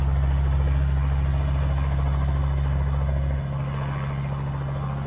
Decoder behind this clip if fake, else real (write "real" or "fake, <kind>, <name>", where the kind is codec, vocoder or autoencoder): real